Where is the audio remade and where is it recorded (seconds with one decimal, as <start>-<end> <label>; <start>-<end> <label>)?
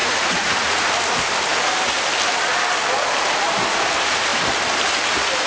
0.0-0.9 remade; 0.9-5.5 recorded